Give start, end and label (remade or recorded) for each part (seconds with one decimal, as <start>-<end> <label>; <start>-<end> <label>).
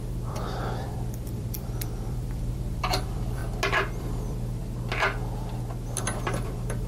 0.0-3.4 remade; 3.4-4.0 recorded; 4.0-4.6 remade; 4.6-6.0 recorded; 6.0-6.9 remade